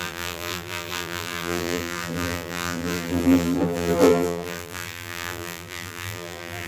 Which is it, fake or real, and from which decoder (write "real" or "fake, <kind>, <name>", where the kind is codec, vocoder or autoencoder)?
fake, vocoder, BigVGAN v2